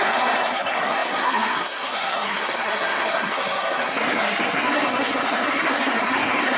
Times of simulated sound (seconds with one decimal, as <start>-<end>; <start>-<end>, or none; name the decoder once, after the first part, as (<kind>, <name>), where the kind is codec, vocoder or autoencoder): 0.0-6.6 (codec, SNAC)